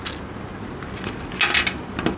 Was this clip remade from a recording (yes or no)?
no